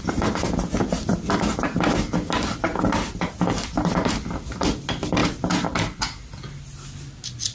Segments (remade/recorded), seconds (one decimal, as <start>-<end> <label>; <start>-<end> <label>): 0.0-7.5 recorded